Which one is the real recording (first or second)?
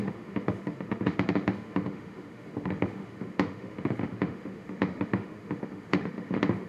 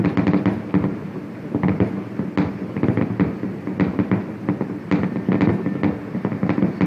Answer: second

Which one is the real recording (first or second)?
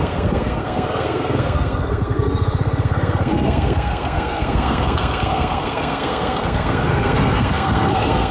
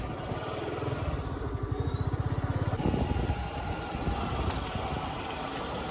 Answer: second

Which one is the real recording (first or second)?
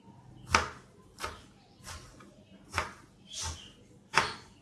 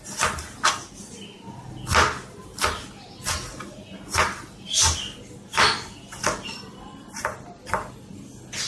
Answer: second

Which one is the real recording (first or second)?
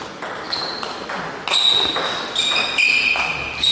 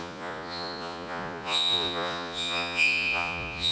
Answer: first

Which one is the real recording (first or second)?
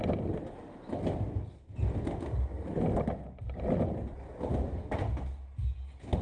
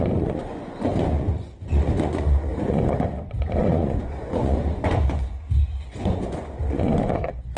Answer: first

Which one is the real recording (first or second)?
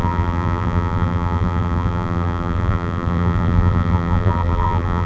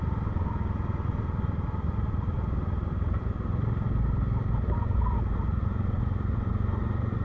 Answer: second